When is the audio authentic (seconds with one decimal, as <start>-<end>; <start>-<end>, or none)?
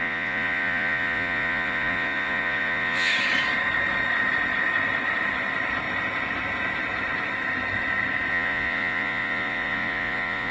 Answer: 3.1-8.3